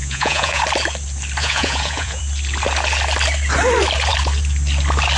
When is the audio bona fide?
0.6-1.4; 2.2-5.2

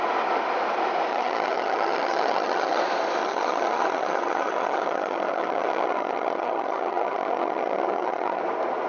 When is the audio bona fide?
0.0-1.1; 2.8-3.2; 8.4-8.9

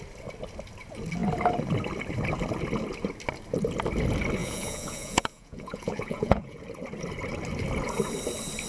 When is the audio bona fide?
0.0-4.4; 6.6-8.7

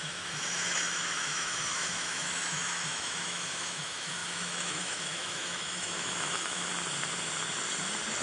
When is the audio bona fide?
6.7-8.2

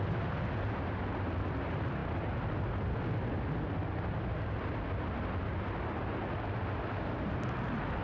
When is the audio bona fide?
0.0-8.0